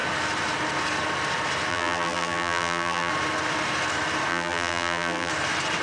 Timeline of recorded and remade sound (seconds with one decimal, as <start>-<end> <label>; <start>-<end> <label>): 0.0-1.7 recorded; 1.7-3.1 remade; 3.1-4.3 recorded; 4.3-5.3 remade; 5.3-5.8 recorded